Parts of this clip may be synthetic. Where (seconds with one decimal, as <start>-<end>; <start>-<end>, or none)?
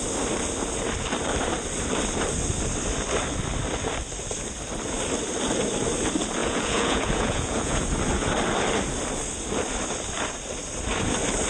6.4-7.8